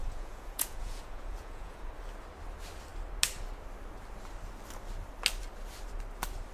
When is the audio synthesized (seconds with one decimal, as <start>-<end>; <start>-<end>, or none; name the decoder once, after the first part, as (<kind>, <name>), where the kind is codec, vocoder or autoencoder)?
0.0-1.9 (vocoder, Vocos)